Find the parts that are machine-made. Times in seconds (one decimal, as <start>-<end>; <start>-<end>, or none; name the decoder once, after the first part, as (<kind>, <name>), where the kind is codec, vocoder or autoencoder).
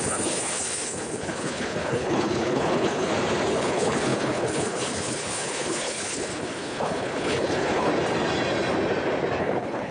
0.0-3.1 (codec, HILCodec); 3.6-7.9; 9.4-9.9